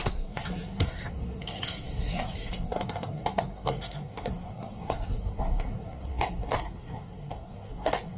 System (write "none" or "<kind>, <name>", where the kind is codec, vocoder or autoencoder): codec, SNAC